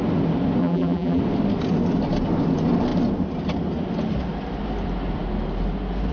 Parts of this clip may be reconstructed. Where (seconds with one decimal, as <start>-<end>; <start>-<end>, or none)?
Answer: 0.6-1.2